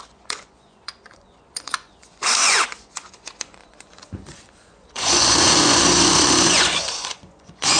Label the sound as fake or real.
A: fake